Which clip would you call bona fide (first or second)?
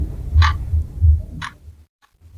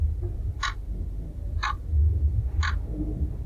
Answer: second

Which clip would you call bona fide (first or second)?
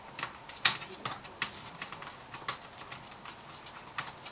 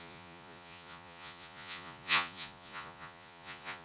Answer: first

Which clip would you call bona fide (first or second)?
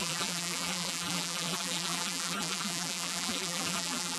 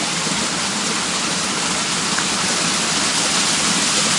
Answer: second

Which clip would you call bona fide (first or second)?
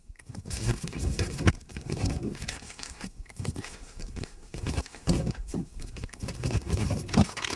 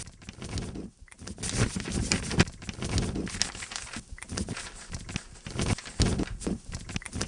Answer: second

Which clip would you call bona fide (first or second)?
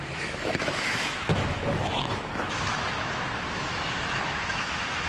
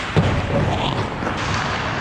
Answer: second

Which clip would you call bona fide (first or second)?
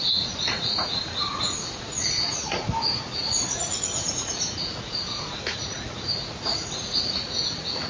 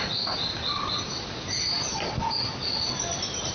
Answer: second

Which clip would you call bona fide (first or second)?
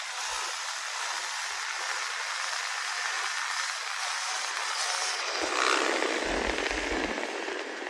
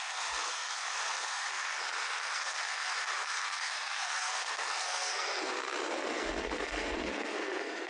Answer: first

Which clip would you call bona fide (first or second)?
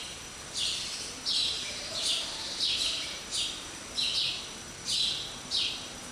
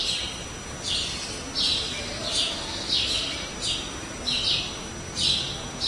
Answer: second